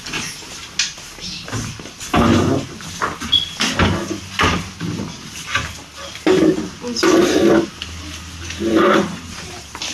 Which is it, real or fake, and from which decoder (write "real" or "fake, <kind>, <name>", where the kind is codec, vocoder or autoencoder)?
real